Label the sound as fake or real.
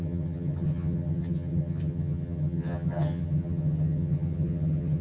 fake